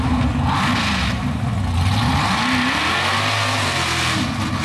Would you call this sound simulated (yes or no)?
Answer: no